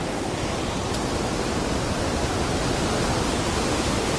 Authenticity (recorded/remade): recorded